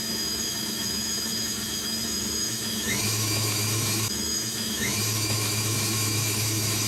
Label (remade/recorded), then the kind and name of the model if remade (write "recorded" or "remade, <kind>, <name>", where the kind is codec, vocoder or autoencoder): remade, autoencoder, DAC-VAE